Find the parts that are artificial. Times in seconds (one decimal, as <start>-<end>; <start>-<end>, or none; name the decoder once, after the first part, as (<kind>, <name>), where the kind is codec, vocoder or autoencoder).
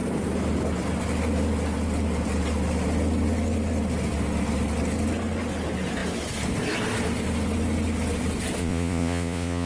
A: 8.6-9.7 (vocoder, Vocos)